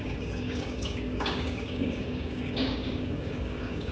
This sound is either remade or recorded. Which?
remade